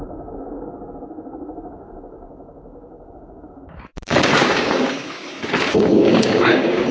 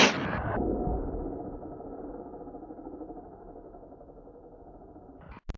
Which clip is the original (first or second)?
second